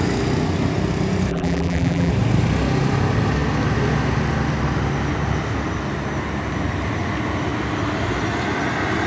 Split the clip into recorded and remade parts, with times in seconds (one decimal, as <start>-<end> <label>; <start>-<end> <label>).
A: 0.0-1.3 recorded; 1.3-2.1 remade; 2.1-9.1 recorded